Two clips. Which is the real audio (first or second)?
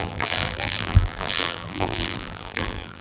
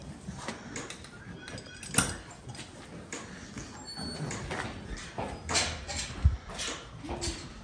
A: second